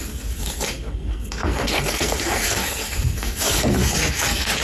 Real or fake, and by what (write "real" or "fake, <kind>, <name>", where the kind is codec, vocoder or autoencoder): fake, codec, SNAC